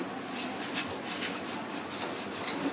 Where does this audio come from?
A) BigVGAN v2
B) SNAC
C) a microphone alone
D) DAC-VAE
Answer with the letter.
C